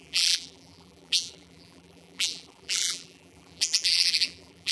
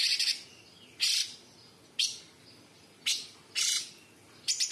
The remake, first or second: first